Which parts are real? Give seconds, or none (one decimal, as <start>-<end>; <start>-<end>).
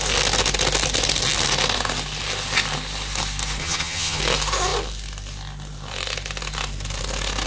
0.0-3.6; 4.2-7.5